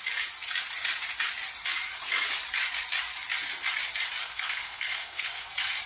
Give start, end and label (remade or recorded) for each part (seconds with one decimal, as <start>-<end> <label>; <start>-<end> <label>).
0.0-4.2 recorded; 4.2-5.5 remade; 5.5-5.9 recorded